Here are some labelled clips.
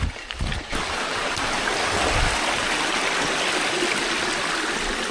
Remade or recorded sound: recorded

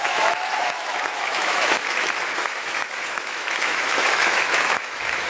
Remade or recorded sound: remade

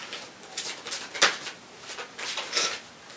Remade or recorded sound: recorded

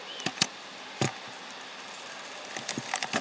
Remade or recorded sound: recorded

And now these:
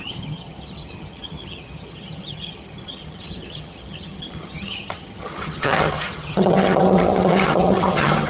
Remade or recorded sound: remade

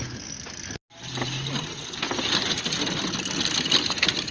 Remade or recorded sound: recorded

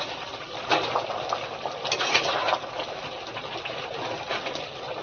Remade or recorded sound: recorded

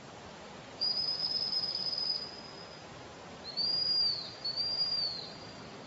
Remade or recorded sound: remade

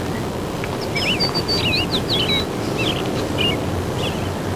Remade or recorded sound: recorded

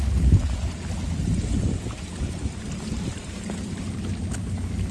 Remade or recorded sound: recorded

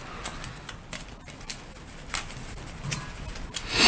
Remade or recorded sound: recorded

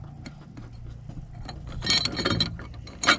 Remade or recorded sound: recorded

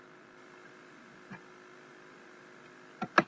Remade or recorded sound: recorded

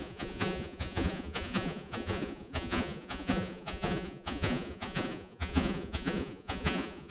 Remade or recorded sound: remade